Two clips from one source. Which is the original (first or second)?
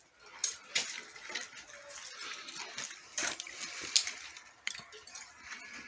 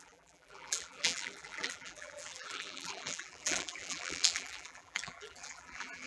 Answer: first